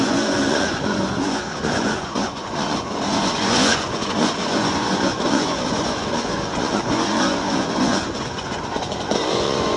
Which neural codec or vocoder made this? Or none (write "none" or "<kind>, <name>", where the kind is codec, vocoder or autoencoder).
vocoder, Vocos